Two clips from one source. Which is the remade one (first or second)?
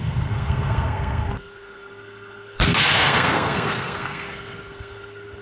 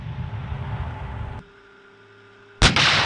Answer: first